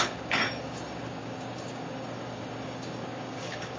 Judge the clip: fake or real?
fake